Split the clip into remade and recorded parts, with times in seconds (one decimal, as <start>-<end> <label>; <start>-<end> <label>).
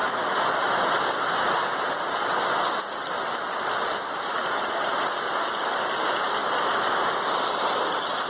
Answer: 0.0-0.5 remade; 0.5-8.3 recorded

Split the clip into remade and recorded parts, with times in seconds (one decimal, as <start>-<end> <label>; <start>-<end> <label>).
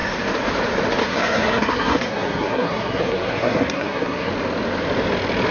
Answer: 0.0-1.0 recorded; 1.0-4.3 remade; 4.3-5.5 recorded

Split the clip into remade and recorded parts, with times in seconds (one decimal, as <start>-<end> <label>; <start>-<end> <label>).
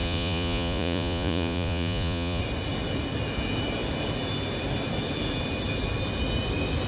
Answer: 0.0-2.4 remade; 2.4-6.9 recorded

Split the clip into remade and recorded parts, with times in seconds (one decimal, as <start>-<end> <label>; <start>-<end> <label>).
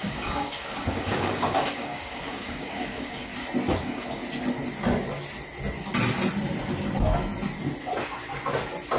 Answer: 0.0-3.3 remade; 3.3-3.8 recorded; 3.8-4.2 remade; 4.2-9.0 recorded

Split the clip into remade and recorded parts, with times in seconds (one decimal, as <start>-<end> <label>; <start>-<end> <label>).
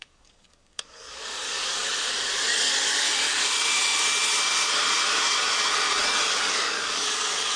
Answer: 0.0-3.8 remade; 3.8-6.3 recorded; 6.3-7.6 remade